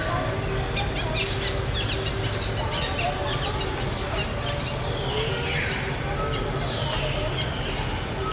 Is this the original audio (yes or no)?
yes